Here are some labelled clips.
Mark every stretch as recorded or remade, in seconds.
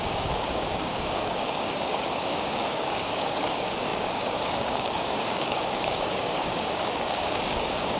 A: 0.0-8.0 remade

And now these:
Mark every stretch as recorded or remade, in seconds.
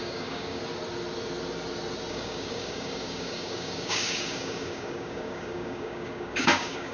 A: 0.0-0.6 remade; 0.6-2.1 recorded; 2.1-6.9 remade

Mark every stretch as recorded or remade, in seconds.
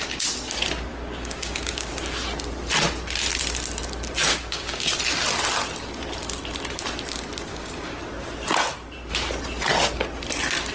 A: 0.0-0.9 recorded; 0.9-1.9 remade; 1.9-4.3 recorded; 4.3-4.9 remade; 4.9-7.5 recorded; 7.5-8.0 remade; 8.0-10.7 recorded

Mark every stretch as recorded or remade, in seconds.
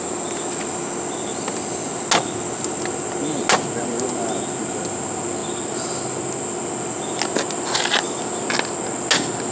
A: 0.0-9.5 recorded